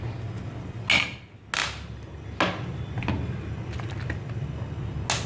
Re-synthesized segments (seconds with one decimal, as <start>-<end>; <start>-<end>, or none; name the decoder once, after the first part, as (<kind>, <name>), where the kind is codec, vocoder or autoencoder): none